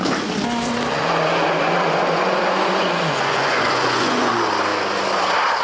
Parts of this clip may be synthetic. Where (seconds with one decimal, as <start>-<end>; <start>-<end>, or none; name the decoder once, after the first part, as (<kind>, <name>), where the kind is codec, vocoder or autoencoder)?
0.9-4.3 (vocoder, Vocos)